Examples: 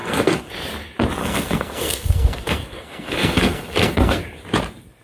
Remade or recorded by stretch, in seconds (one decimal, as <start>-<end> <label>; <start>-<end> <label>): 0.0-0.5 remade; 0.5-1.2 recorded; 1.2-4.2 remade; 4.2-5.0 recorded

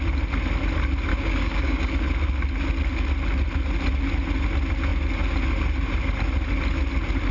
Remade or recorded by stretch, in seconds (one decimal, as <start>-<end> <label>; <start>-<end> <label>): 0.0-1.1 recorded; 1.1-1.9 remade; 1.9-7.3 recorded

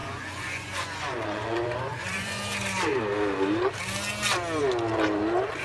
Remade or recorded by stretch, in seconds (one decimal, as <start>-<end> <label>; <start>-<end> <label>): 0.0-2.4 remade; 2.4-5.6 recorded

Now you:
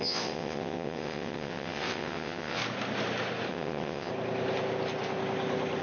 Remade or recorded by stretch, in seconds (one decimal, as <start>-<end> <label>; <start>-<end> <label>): 0.0-2.6 remade; 2.6-3.5 recorded; 3.5-4.1 remade; 4.1-5.8 recorded